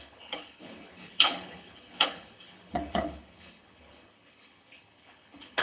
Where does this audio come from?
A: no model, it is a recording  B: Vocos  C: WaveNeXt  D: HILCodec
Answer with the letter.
D